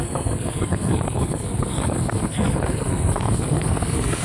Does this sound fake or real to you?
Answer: fake